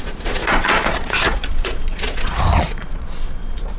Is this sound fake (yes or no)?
yes